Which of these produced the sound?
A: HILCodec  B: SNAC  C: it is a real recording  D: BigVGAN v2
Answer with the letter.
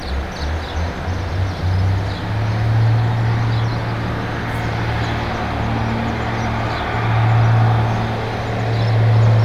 C